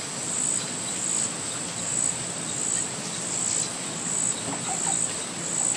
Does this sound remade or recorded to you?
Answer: recorded